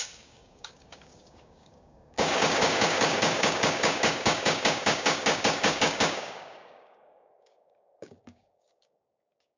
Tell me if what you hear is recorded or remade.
remade